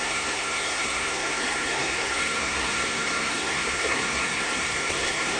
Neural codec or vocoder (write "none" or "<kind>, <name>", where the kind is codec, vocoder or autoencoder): codec, SNAC